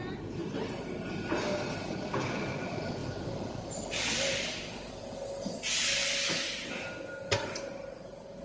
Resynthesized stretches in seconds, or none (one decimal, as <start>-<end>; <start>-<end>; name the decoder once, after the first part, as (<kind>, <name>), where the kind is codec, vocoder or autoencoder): 3.0-4.9 (vocoder, BigVGAN v2); 6.0-6.9

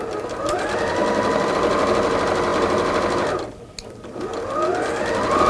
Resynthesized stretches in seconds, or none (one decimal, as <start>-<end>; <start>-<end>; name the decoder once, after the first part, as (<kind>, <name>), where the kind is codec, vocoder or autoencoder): none

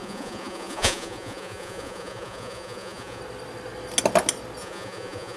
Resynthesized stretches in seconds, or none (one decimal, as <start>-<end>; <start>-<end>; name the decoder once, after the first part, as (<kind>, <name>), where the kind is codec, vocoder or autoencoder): 0.0-3.2 (vocoder, Vocos); 4.6-5.4

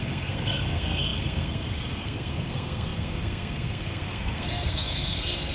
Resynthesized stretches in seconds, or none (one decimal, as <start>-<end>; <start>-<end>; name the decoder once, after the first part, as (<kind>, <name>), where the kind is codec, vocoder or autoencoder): 0.0-5.5 (codec, SNAC)

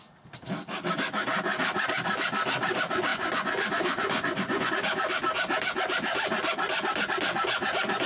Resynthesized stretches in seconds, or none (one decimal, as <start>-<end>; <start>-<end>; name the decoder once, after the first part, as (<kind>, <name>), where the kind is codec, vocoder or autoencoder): 3.1-4.7 (vocoder, Vocos)

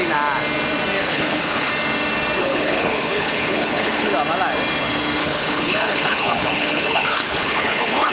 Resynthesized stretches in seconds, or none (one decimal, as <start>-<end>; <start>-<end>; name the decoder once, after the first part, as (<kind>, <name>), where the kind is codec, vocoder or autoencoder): 1.0-1.7 (codec, HILCodec); 2.4-4.1; 5.2-8.1

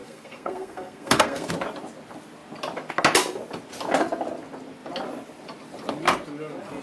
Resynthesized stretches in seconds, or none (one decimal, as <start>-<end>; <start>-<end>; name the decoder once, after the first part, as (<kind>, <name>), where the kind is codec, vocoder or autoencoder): 0.0-1.5 (codec, SNAC)

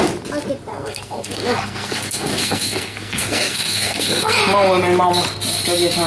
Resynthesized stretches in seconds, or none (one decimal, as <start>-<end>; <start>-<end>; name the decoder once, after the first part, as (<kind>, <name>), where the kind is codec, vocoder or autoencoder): 0.7-4.4 (codec, SNAC)